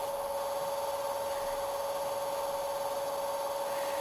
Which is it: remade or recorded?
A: recorded